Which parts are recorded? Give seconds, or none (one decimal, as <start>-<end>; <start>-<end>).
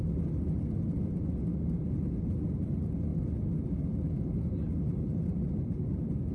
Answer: 3.1-5.7